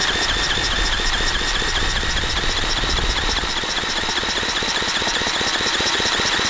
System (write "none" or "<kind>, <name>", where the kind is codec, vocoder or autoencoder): none